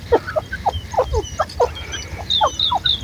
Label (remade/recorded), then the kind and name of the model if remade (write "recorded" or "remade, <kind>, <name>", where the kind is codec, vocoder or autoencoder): recorded